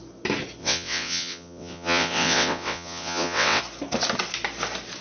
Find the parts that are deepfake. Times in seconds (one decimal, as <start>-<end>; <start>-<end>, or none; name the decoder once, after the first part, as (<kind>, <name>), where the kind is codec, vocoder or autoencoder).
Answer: 0.6-3.6 (vocoder, WaveNeXt)